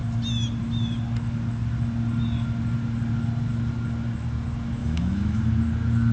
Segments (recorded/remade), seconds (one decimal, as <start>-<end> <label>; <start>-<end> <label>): 0.0-4.8 recorded; 4.8-5.4 remade; 5.4-6.1 recorded